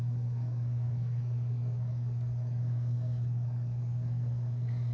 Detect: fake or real fake